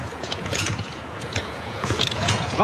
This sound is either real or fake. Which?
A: fake